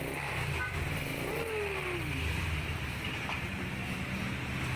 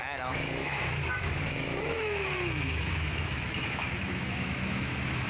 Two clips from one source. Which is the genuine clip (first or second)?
first